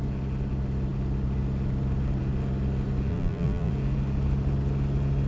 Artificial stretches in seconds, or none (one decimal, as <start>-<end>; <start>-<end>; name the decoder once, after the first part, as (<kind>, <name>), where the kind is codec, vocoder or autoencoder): 3.1-3.7 (vocoder, BigVGAN v2)